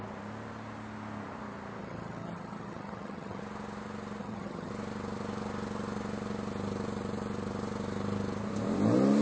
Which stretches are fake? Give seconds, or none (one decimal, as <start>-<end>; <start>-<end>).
1.8-3.4; 4.2-4.7